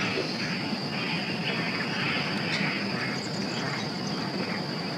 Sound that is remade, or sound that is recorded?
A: recorded